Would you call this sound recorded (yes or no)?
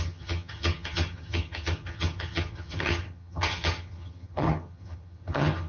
no